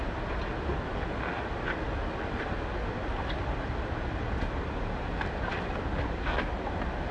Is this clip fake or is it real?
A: real